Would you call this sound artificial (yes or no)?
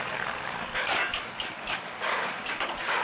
yes